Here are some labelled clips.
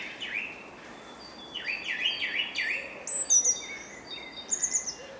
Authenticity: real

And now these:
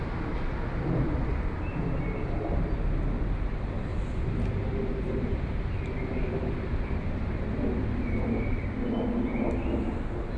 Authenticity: real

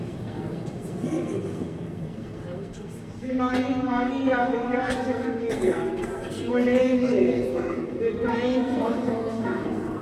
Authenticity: fake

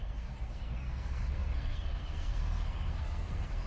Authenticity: fake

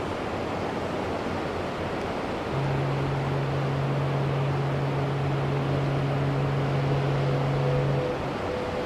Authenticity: real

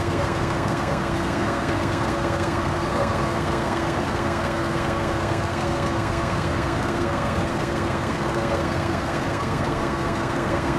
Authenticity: fake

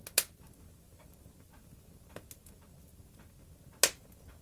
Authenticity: real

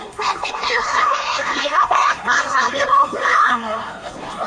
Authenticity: fake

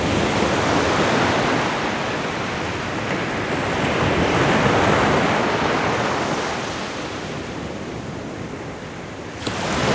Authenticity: real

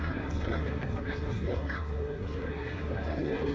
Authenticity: fake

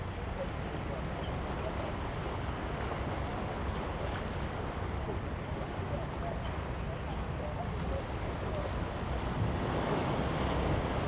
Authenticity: real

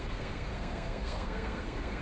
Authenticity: fake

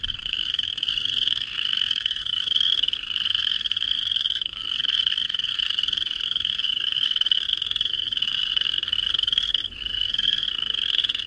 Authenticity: fake